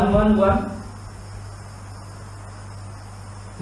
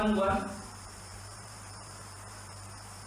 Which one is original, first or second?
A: first